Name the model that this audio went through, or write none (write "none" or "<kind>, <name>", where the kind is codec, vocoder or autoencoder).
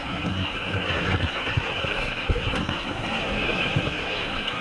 codec, SNAC